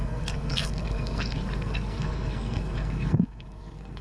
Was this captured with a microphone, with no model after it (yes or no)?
no